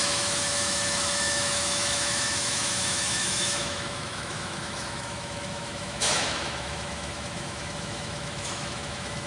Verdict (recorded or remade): remade